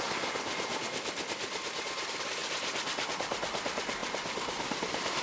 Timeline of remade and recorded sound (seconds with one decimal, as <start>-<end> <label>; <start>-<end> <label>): 0.0-4.0 recorded; 4.0-5.2 remade